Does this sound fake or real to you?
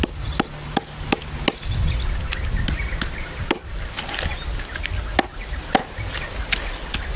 real